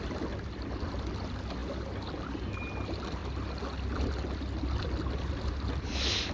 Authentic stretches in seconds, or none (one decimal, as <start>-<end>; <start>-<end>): 0.0-6.3